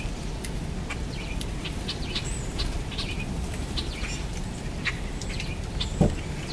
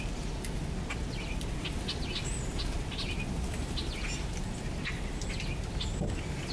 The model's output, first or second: first